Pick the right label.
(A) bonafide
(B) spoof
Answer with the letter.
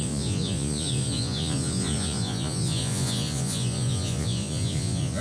B